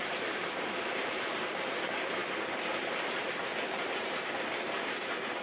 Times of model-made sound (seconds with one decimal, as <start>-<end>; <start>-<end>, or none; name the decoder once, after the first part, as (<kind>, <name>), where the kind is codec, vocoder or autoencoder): 0.0-2.2 (vocoder, BigVGAN v2); 4.2-5.4